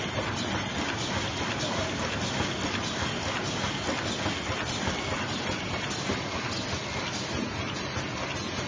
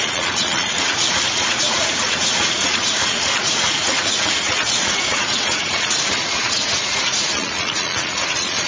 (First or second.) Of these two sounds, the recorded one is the first